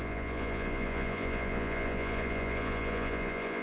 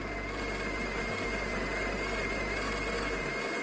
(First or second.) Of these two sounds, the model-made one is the first